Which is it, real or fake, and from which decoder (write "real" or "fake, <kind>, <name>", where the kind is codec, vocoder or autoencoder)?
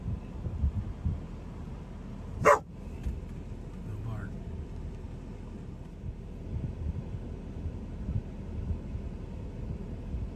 real